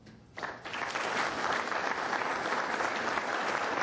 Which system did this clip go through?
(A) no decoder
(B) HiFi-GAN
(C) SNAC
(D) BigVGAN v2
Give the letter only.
A